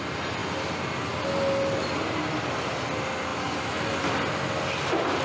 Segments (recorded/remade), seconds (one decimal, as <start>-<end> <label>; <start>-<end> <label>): 0.0-5.2 recorded